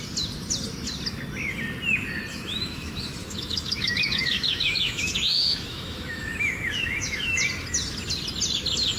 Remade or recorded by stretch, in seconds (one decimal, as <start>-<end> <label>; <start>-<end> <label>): 0.0-2.3 recorded; 2.3-7.4 remade; 7.4-9.0 recorded